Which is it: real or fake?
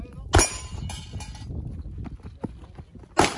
real